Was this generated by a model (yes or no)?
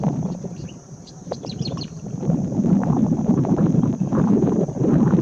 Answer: yes